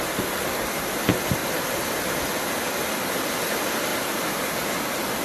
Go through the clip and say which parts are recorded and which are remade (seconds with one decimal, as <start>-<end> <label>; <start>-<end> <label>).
0.0-1.4 recorded; 1.4-2.7 remade; 2.7-3.9 recorded; 3.9-4.7 remade; 4.7-5.2 recorded